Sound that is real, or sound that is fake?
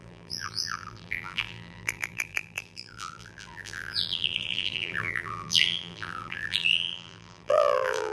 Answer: fake